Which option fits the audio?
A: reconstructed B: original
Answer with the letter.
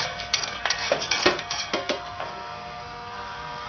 A